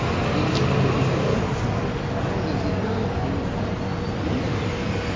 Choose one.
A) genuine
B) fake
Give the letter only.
A